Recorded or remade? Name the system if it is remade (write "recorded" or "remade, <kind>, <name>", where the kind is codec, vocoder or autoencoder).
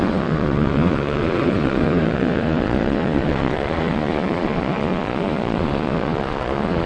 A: remade, vocoder, Vocos